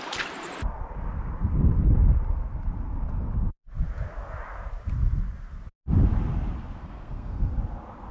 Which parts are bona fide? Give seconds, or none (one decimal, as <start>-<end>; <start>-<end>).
0.0-6.8; 7.5-8.1